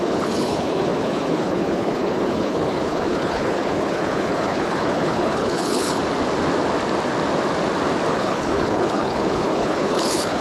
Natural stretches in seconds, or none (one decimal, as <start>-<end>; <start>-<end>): 6.0-8.1